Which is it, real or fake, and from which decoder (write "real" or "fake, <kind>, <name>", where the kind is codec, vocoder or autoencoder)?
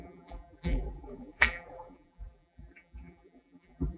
fake, vocoder, BigVGAN v2